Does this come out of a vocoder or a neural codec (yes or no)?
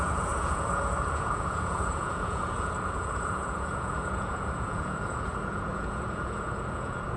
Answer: yes